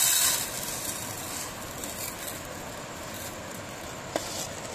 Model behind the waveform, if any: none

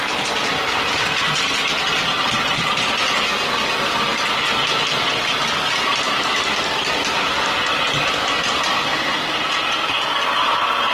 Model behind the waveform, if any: none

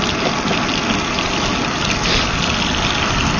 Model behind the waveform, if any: none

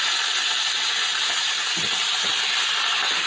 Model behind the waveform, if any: none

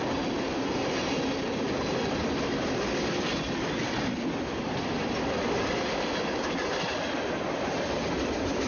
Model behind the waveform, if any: vocoder, BigVGAN v2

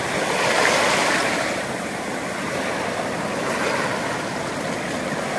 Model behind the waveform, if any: none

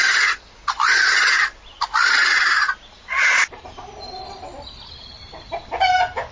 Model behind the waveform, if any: none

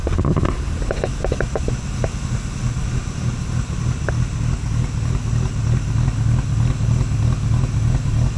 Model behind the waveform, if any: none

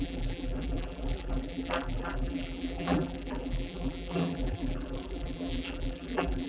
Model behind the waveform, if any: vocoder, BigVGAN v2